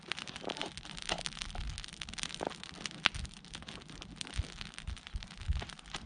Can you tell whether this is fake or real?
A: real